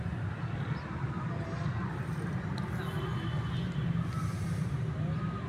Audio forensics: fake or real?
real